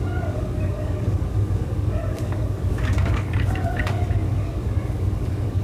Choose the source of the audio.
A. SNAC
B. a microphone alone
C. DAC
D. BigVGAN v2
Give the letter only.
C